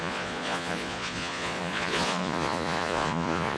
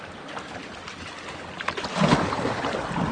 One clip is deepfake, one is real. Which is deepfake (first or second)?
first